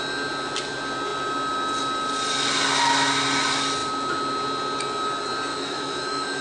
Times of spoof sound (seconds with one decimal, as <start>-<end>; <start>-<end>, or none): 5.5-6.4